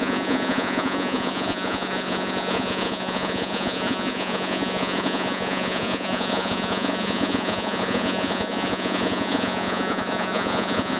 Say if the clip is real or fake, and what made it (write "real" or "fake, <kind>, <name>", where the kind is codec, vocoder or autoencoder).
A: fake, vocoder, Vocos